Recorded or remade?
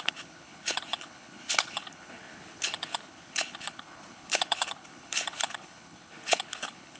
remade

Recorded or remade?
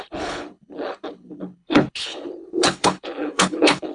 remade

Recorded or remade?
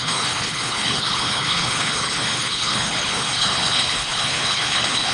remade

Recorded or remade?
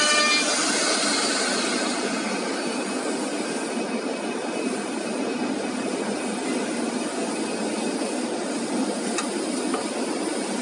recorded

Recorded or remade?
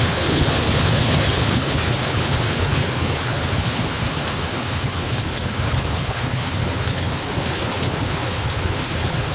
remade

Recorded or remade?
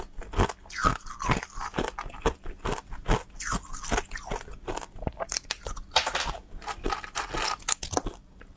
recorded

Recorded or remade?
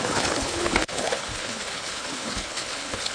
remade